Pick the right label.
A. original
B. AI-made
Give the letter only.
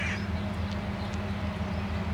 A